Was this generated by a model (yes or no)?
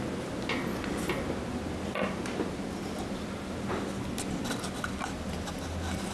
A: no